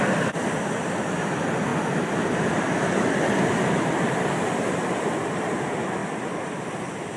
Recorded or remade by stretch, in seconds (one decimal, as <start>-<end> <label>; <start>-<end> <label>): 0.0-7.2 recorded